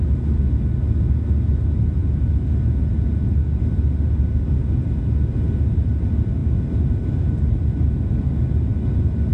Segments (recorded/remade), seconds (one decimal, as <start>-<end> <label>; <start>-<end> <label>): 0.0-9.3 recorded